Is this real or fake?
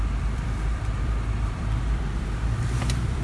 fake